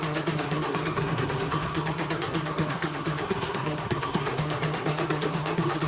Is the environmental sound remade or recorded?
remade